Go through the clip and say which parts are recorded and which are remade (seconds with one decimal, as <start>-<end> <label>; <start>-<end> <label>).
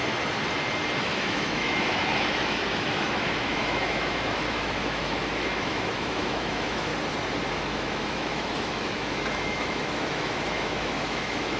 0.0-1.0 recorded; 1.0-6.9 remade; 6.9-7.5 recorded; 7.5-11.6 remade